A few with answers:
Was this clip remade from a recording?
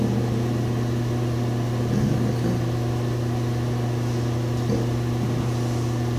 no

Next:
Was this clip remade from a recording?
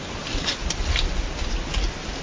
no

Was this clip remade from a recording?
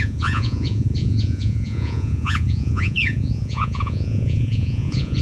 yes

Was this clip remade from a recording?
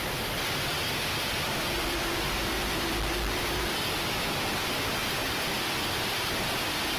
no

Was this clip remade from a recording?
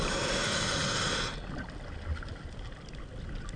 no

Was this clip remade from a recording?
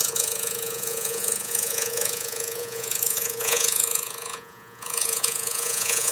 yes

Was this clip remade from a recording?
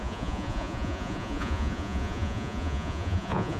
yes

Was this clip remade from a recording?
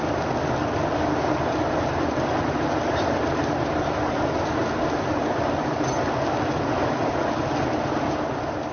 no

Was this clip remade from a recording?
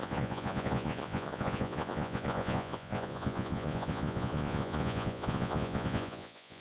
yes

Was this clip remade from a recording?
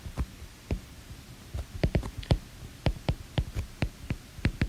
no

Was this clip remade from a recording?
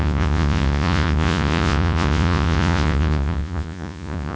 yes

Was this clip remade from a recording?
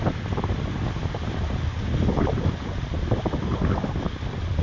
no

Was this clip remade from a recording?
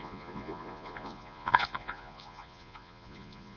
yes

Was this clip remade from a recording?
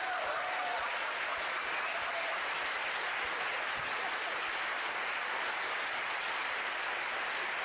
no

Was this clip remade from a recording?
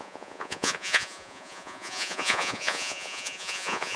yes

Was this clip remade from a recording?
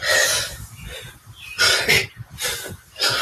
no